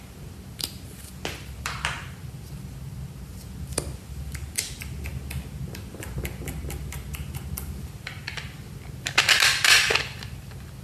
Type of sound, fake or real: real